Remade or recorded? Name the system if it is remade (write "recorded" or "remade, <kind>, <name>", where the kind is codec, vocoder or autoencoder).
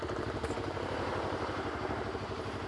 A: remade, vocoder, BigVGAN v2